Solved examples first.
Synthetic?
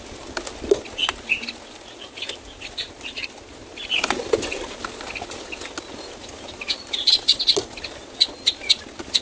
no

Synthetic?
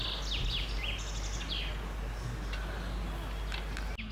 no